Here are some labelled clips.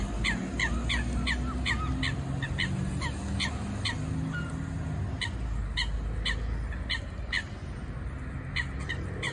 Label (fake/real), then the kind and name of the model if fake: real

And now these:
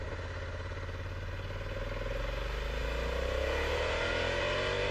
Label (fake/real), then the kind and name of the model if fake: real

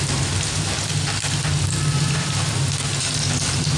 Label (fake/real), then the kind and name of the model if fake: real